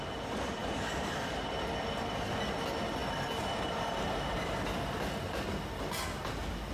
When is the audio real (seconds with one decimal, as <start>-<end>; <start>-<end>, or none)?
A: 0.0-6.7